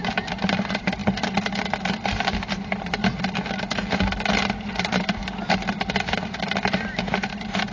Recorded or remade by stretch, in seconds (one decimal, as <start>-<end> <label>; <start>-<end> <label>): 0.0-1.0 remade; 1.0-1.9 recorded; 1.9-3.1 remade; 3.1-4.7 recorded; 4.7-5.2 remade; 5.2-6.4 recorded; 6.4-7.7 remade